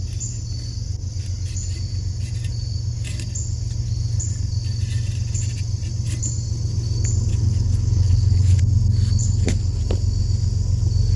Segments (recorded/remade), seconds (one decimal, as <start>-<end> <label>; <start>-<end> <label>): 0.0-7.3 recorded; 7.3-8.6 remade; 8.6-9.2 recorded; 9.2-9.8 remade; 9.8-11.2 recorded